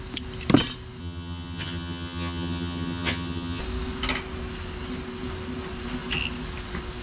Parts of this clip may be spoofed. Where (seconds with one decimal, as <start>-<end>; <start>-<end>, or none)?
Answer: 1.0-3.6